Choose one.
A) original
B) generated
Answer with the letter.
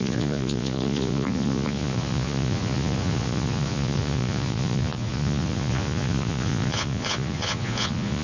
B